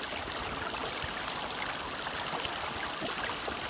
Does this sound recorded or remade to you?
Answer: recorded